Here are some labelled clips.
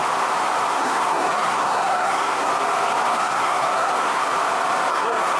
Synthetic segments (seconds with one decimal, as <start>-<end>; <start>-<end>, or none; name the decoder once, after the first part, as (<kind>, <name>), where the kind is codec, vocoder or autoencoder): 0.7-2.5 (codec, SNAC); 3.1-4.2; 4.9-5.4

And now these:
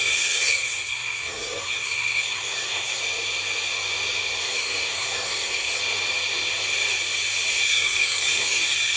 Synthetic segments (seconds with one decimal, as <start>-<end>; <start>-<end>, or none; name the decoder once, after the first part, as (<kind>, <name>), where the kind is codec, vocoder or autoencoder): 0.0-3.0 (codec, SNAC); 4.4-5.8; 7.5-9.0

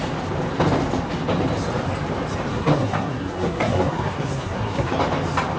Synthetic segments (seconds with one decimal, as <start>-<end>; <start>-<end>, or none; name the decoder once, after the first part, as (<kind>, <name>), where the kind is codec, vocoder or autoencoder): 2.5-4.9 (codec, SNAC)